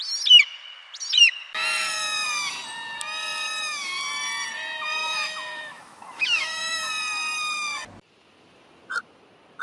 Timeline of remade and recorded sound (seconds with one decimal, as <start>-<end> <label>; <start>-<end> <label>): 0.0-5.0 recorded; 5.0-6.9 remade; 6.9-9.6 recorded